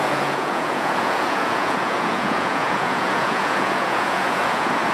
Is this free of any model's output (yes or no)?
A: no